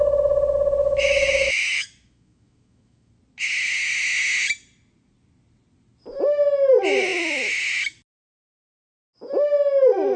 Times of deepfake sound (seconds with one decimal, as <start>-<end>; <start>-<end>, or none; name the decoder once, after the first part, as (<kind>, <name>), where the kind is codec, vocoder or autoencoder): 0.8-3.1 (autoencoder, DAC-VAE)